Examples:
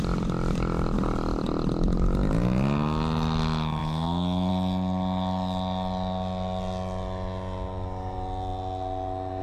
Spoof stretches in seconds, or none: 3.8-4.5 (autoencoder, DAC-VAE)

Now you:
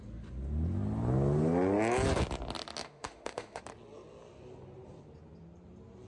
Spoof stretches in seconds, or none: 2.8-3.6 (autoencoder, DAC-VAE)

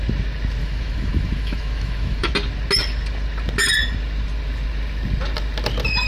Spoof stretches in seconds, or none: 0.6-2.3 (autoencoder, DAC-VAE)